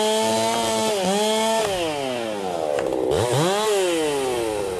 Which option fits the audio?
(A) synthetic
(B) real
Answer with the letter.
B